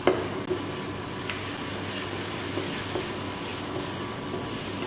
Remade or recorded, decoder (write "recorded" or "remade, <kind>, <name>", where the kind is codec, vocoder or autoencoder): recorded